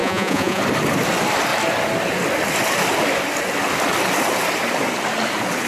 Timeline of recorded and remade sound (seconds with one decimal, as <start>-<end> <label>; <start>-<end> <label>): 0.0-0.6 remade; 0.6-5.7 recorded